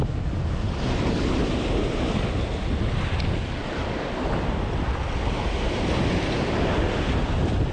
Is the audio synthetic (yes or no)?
no